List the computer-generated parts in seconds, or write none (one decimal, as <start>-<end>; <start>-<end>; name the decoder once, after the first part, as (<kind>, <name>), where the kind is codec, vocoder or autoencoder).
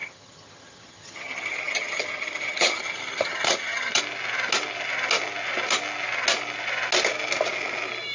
0.0-4.0 (vocoder, HiFi-GAN)